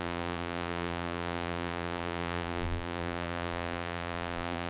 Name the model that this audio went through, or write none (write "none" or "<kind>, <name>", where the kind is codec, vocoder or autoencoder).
vocoder, BigVGAN v2